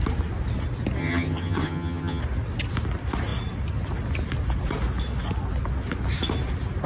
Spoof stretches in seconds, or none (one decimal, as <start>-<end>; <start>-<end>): 1.0-2.2